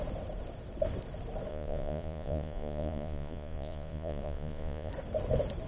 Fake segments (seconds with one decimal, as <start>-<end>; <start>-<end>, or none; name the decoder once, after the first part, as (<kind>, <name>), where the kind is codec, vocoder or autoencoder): 1.5-4.9 (vocoder, Vocos)